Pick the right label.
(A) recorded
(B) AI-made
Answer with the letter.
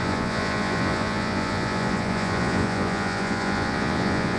B